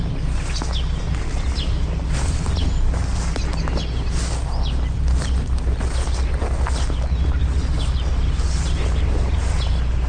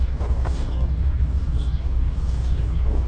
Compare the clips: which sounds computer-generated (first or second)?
second